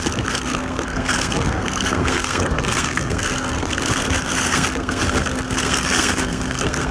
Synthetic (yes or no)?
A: yes